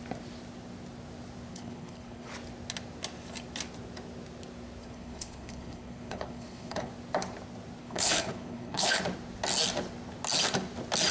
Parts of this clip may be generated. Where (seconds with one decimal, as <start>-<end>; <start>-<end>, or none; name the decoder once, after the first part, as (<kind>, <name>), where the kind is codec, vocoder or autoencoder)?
1.5-2.3 (codec, HILCodec); 4.8-6.9; 7.8-9.0